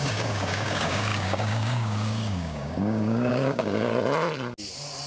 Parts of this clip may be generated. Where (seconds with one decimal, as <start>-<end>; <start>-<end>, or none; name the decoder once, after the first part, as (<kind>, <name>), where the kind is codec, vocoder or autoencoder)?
0.0-3.9 (codec, DAC)